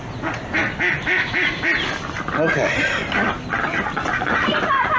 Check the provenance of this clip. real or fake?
real